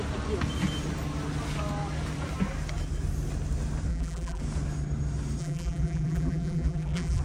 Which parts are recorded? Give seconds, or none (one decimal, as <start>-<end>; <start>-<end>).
0.0-3.9; 4.4-5.4